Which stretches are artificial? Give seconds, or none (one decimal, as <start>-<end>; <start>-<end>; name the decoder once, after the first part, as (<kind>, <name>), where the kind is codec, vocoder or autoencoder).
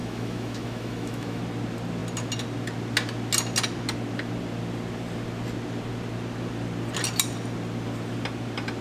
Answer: 0.0-1.4 (autoencoder, DAC-VAE)